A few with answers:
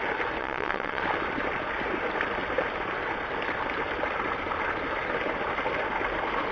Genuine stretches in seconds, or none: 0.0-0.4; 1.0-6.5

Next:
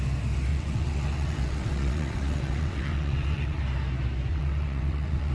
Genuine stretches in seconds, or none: 0.0-0.5; 3.6-4.3